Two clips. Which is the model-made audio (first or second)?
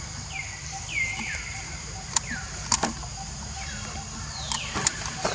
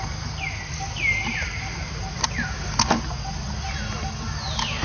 first